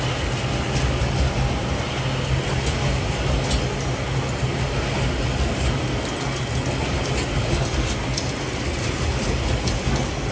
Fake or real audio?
real